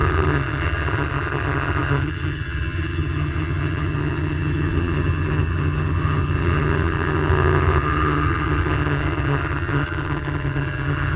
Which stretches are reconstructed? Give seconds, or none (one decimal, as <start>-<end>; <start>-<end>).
0.0-11.2